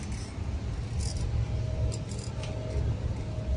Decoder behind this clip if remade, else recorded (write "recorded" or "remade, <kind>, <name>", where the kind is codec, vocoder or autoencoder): recorded